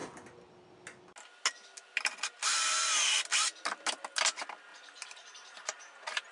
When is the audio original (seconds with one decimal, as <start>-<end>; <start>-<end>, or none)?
0.0-4.7